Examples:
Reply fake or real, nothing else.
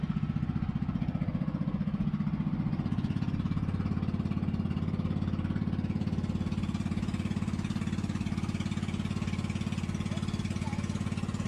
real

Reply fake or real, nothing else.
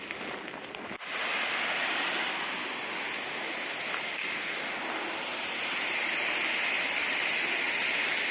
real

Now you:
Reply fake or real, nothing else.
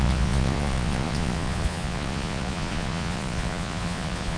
fake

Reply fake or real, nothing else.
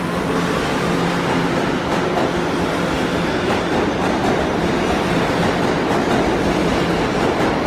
real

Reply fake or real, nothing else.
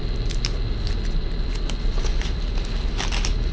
real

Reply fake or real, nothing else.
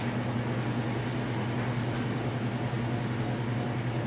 real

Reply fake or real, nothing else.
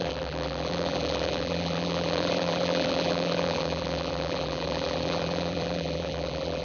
fake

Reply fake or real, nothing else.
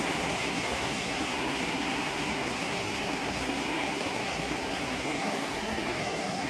fake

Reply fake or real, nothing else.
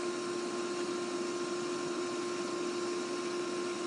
real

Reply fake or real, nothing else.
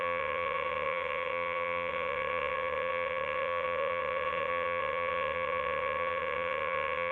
fake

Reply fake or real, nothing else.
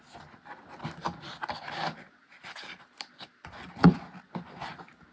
real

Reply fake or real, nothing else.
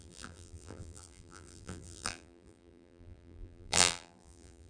fake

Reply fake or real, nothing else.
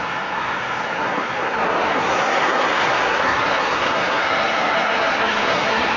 fake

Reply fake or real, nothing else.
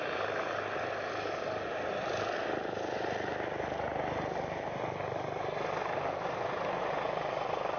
real